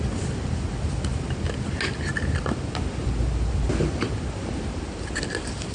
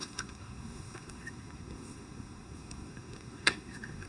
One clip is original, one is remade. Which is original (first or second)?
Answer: first